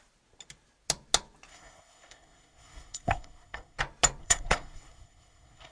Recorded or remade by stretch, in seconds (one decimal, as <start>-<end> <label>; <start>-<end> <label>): 0.0-1.5 recorded; 1.5-3.8 remade; 3.8-4.2 recorded; 4.2-5.7 remade